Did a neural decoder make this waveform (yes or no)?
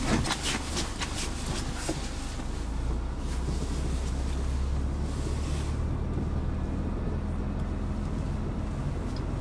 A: no